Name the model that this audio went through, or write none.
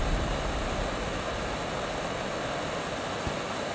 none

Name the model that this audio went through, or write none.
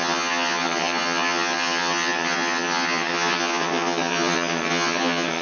vocoder, HiFi-GAN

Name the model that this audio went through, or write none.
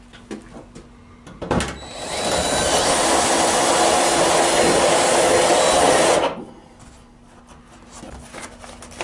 none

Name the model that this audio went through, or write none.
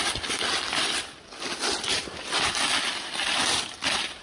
none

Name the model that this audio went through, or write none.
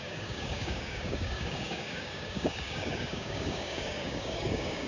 codec, DAC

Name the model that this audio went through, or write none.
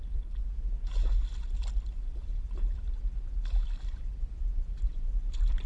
none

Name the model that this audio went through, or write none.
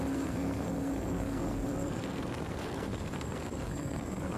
codec, SNAC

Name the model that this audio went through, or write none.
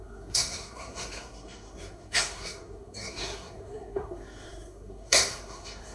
codec, SNAC